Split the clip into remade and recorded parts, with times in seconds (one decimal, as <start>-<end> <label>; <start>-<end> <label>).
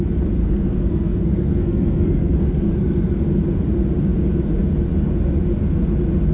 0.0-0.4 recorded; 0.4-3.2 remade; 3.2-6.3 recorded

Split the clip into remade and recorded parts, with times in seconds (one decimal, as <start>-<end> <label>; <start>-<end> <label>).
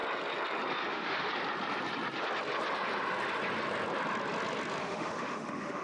0.0-0.9 recorded; 0.9-1.3 remade; 1.3-4.8 recorded; 4.8-5.8 remade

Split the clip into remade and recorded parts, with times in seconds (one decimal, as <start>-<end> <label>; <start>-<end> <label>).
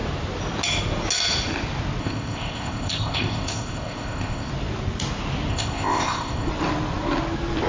0.0-2.0 recorded; 2.0-4.5 remade; 4.5-5.5 recorded; 5.5-6.5 remade; 6.5-7.7 recorded